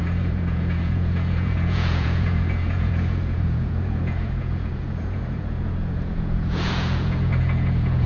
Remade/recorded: remade